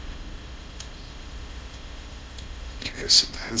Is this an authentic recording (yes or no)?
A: no